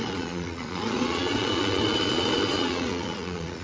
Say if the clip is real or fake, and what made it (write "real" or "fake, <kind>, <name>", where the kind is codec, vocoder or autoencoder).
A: fake, vocoder, Vocos